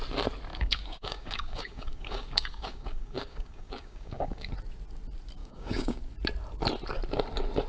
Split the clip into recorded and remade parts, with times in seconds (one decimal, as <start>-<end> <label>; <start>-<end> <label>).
0.0-0.5 recorded; 0.5-4.5 remade; 4.5-5.4 recorded; 5.4-6.0 remade; 6.0-7.7 recorded